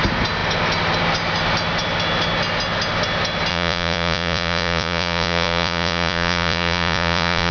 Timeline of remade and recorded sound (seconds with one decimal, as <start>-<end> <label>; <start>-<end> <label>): 0.0-3.5 recorded; 3.5-7.5 remade